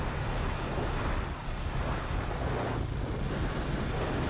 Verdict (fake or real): real